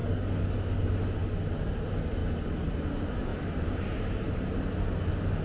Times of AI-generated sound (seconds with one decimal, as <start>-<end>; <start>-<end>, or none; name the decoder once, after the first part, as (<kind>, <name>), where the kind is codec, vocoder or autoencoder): 0.0-0.9 (codec, DAC)